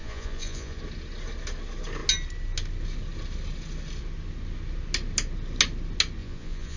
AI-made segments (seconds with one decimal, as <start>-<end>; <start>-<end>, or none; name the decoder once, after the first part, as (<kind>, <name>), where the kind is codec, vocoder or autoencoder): 0.0-0.8 (vocoder, Vocos); 6.2-6.8